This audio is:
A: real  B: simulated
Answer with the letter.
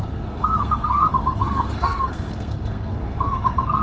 B